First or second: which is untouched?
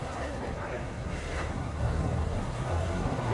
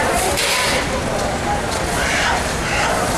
second